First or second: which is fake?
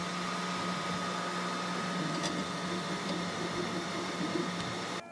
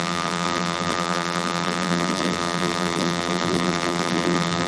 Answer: second